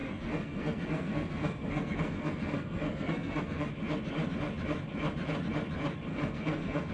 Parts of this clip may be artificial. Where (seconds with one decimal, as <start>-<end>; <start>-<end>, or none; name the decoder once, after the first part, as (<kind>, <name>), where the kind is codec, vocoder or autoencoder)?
0.0-3.7 (codec, SNAC); 6.1-6.9